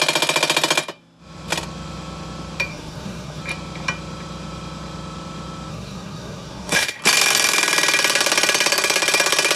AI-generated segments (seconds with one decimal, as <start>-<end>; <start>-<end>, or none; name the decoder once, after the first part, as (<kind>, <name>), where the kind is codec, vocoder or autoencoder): 2.7-3.4 (codec, SNAC); 5.7-7.0